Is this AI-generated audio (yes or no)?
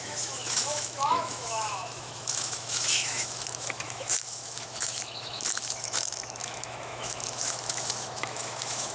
yes